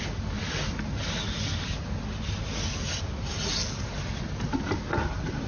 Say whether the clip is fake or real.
real